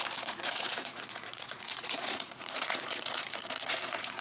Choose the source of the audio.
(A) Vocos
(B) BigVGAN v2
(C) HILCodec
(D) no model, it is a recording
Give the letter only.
A